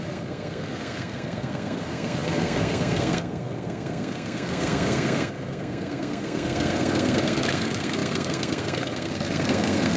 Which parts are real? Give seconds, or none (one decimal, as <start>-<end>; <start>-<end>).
none